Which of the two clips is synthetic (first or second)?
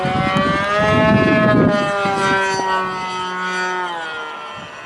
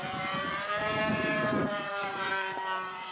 second